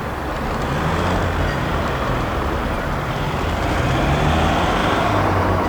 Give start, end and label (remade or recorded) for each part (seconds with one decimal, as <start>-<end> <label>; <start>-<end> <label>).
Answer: 0.0-1.6 recorded; 1.6-2.8 remade; 2.8-4.8 recorded; 4.8-5.7 remade